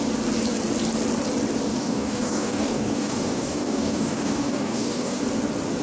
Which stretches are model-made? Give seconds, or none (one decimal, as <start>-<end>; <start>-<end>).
1.7-5.2

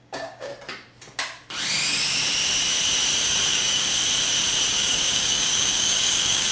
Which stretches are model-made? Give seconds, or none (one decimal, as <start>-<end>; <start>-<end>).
0.0-0.5; 3.5-3.9; 4.7-6.5

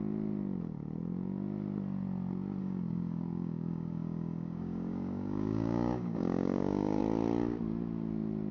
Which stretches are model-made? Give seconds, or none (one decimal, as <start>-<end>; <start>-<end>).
2.6-7.0

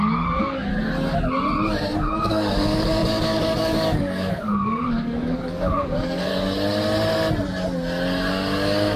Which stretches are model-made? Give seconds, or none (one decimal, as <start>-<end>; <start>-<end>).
0.0-0.7; 2.0-6.3; 8.3-9.0

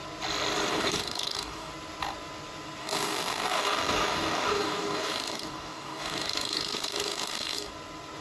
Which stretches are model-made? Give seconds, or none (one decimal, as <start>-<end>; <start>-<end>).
0.7-1.7; 2.8-7.7

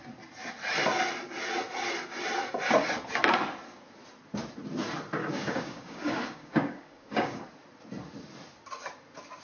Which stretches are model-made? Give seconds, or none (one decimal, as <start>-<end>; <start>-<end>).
5.2-7.5

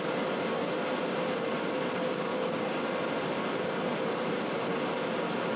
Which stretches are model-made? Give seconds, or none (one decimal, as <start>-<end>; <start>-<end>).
2.3-2.8

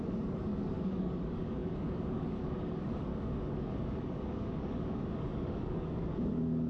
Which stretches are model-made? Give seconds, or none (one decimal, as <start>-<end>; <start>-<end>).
0.0-6.7